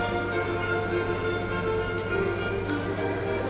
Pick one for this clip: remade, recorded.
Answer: recorded